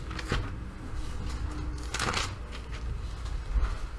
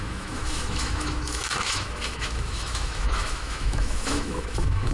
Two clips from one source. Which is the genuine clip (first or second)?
first